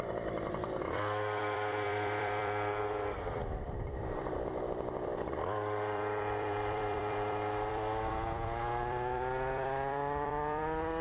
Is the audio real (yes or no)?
no